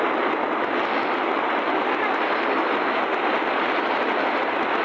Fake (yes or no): no